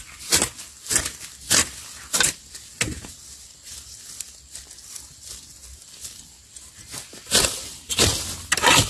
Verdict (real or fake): real